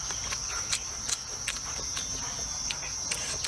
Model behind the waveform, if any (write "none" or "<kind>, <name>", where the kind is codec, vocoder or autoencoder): none